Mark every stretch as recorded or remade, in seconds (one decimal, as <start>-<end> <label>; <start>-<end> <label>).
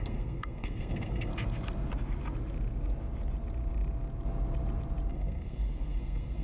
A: 0.0-1.3 remade; 1.3-5.1 recorded; 5.1-6.4 remade